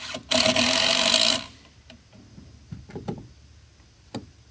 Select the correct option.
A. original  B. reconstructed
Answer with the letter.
A